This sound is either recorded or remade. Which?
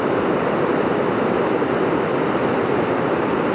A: recorded